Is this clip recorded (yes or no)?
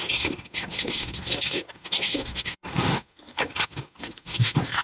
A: no